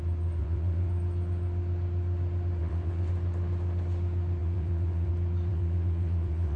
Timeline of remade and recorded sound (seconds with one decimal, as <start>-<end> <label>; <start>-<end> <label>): 0.0-0.4 recorded; 0.4-0.9 remade; 0.9-2.6 recorded; 2.6-3.1 remade; 3.1-4.4 recorded; 4.4-5.1 remade; 5.1-5.5 recorded; 5.5-6.6 remade